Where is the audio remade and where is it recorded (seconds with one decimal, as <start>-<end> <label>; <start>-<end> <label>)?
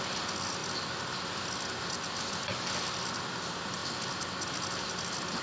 0.0-5.4 recorded